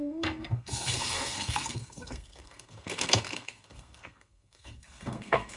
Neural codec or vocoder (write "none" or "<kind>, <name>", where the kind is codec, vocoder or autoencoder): codec, SNAC